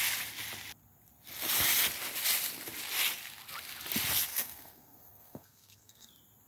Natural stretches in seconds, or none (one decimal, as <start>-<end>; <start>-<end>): 0.0-4.3; 6.1-6.5

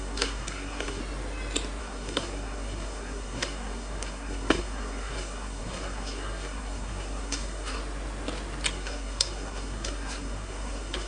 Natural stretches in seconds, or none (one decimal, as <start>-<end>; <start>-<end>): 1.0-1.8; 7.8-8.7

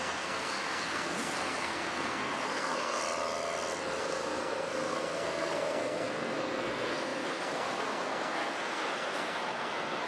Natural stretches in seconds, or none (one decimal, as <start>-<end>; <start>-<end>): 3.0-4.0

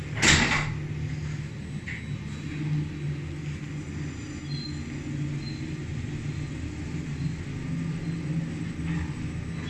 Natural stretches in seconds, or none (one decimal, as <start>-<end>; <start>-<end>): 0.0-9.7